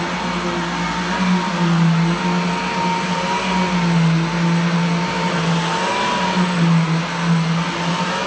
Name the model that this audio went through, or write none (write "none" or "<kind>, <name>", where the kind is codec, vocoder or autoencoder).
none